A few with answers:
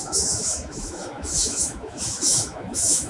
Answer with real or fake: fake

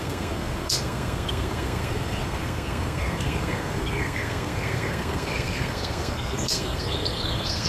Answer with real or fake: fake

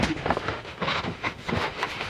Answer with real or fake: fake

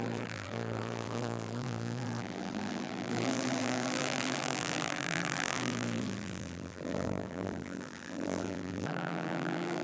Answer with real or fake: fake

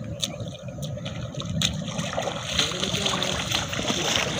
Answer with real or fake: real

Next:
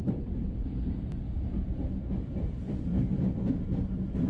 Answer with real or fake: fake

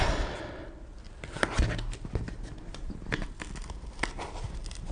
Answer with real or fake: real